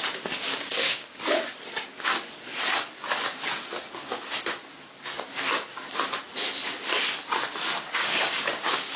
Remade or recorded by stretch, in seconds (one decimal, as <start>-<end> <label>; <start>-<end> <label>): 0.0-0.5 recorded; 0.5-1.2 remade; 1.2-8.0 recorded; 8.0-8.5 remade; 8.5-9.0 recorded